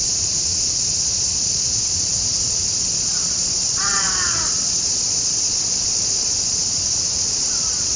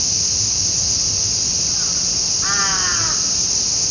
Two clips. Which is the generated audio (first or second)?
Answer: first